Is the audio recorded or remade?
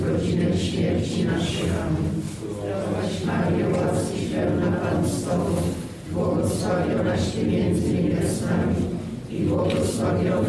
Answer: recorded